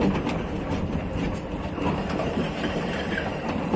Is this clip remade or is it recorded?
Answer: remade